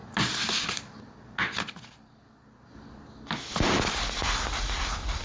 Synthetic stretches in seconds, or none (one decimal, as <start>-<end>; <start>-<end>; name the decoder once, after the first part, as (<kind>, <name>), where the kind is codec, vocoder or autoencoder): none